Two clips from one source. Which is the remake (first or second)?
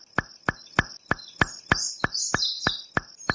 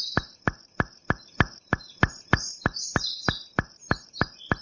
second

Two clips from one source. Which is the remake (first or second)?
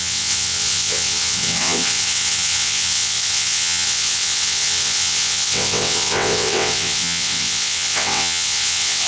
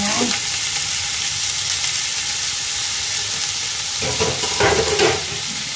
first